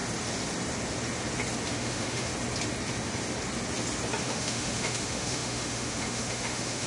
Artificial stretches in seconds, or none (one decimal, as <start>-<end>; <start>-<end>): 1.7-2.3; 4.2-6.9